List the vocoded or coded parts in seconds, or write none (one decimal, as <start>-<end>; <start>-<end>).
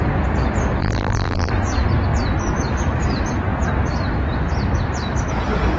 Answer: 0.8-1.5